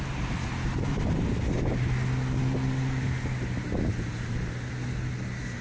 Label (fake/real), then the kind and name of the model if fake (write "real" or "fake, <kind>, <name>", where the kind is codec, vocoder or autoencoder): real